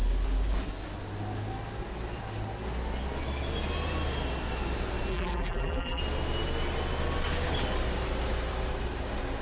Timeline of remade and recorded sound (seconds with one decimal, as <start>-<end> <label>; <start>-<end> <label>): 0.0-5.1 recorded; 5.1-6.0 remade; 6.0-9.4 recorded